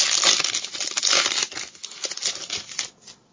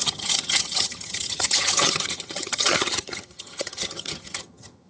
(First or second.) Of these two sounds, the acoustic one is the first